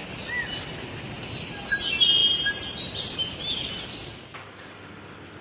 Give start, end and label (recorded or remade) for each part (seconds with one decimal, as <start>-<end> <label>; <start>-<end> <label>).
0.0-5.4 recorded